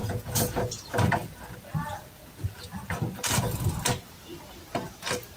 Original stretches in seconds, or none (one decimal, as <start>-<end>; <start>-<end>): 0.9-5.4